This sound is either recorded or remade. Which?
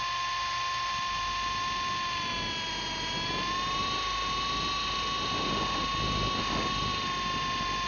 recorded